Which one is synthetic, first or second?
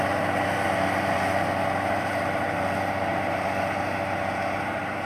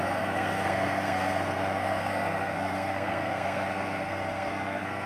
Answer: second